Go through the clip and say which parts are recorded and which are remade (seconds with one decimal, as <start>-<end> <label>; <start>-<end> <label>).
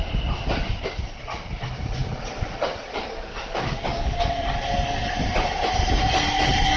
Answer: 0.0-2.9 recorded; 2.9-4.2 remade; 4.2-6.8 recorded